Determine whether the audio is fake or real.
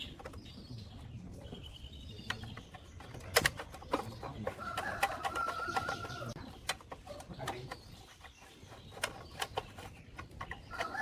real